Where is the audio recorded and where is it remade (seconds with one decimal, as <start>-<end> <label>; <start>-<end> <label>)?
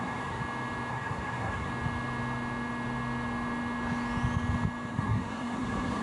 0.0-0.4 remade; 0.4-0.9 recorded; 0.9-1.7 remade; 1.7-4.9 recorded; 4.9-6.0 remade